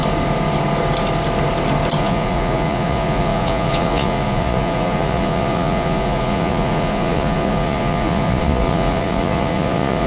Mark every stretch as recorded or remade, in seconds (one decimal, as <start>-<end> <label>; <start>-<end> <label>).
0.0-2.0 recorded; 2.0-10.1 remade